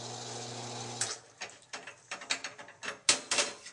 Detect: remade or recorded recorded